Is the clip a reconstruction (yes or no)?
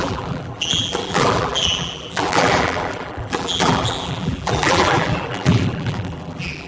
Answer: yes